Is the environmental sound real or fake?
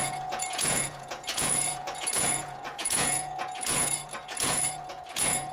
fake